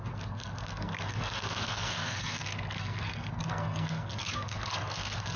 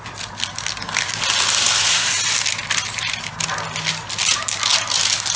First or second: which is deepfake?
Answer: first